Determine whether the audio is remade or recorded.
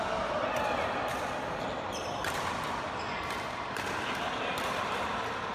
recorded